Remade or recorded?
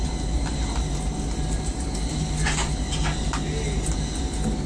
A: recorded